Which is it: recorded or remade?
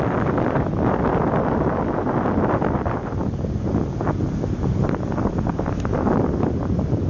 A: recorded